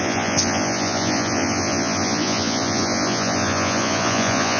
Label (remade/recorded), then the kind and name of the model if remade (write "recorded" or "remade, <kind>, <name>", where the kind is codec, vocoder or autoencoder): remade, vocoder, Vocos